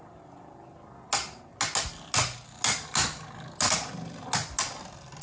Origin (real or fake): real